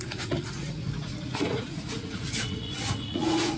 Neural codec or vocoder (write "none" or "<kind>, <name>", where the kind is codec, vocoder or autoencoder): vocoder, Vocos